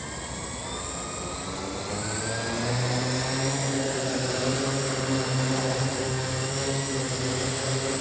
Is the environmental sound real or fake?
real